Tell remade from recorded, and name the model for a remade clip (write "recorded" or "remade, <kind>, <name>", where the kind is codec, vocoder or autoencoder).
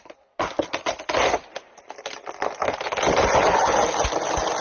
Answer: recorded